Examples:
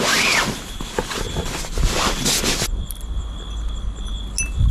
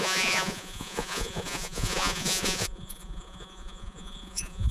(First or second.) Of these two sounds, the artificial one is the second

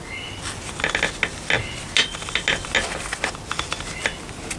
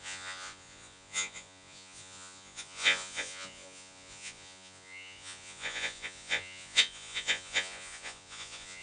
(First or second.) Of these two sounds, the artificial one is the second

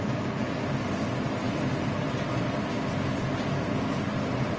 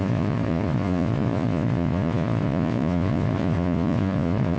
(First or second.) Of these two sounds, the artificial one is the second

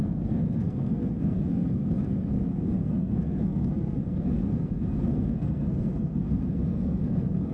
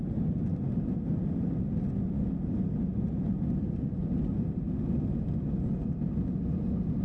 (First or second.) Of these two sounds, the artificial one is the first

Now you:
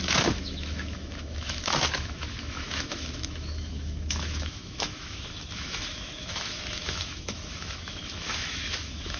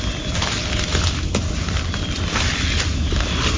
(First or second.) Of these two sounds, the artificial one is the first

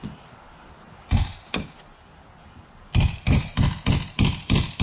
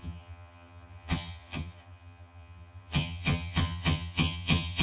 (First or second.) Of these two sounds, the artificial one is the second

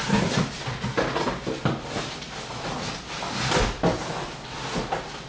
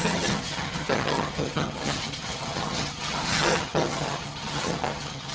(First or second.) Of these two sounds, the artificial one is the second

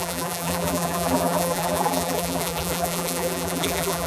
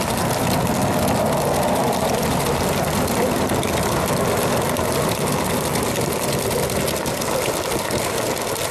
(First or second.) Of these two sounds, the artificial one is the first